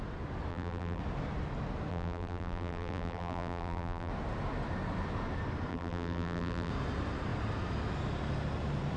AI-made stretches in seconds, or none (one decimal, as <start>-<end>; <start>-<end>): 0.5-1.0; 1.9-4.1; 5.7-6.7